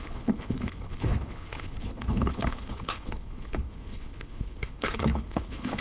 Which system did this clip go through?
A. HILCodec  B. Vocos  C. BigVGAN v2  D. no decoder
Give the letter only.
A